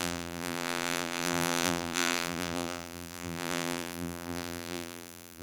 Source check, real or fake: fake